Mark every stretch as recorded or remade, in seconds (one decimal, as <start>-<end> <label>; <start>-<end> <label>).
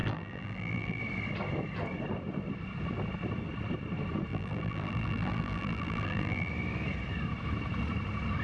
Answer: 0.0-1.0 remade; 1.0-4.3 recorded; 4.3-6.5 remade; 6.5-8.4 recorded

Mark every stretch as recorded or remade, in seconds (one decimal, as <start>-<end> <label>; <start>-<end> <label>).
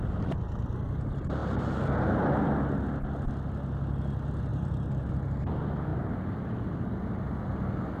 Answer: 0.0-4.5 recorded; 4.5-5.1 remade; 5.1-8.0 recorded